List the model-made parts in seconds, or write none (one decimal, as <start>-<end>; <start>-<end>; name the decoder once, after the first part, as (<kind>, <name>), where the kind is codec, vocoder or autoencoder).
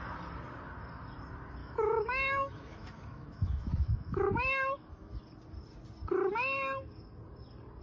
1.6-5.2 (autoencoder, DAC-VAE)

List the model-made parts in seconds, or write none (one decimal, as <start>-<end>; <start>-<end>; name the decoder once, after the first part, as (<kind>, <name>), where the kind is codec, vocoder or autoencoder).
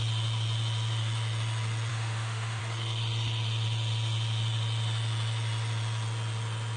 1.9-2.6 (autoencoder, DAC-VAE)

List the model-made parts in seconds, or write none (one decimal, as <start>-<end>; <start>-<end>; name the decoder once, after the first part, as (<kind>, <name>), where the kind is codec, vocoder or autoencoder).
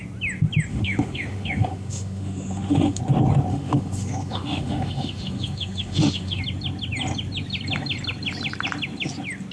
0.7-3.0 (autoencoder, DAC-VAE); 3.5-6.4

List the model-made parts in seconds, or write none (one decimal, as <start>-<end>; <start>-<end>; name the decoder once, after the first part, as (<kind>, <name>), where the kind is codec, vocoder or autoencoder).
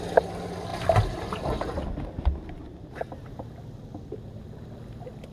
none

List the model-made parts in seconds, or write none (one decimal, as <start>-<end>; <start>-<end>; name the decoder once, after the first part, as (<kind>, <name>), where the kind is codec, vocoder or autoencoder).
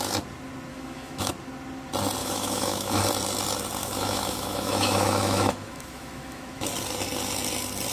0.7-1.3 (autoencoder, DAC-VAE); 2.2-3.0; 3.8-6.6